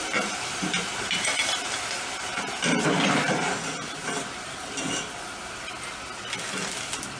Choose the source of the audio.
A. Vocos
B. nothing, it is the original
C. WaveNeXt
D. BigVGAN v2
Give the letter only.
B